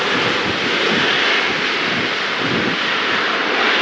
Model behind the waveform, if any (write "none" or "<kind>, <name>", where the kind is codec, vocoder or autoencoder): none